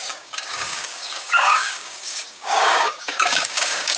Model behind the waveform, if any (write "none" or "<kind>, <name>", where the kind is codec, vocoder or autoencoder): codec, DAC